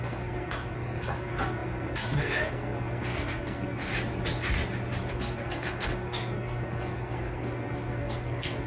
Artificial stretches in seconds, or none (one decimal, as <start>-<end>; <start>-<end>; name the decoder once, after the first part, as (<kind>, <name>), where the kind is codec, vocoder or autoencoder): 0.0-3.9 (codec, SNAC); 5.1-8.7